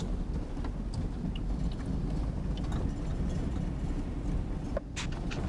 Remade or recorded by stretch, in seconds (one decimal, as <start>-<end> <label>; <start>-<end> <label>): 0.0-5.5 recorded